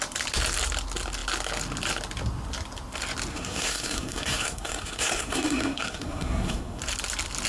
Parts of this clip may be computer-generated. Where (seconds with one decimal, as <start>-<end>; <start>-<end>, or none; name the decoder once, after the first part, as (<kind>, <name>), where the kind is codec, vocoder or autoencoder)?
3.3-6.8 (codec, SNAC)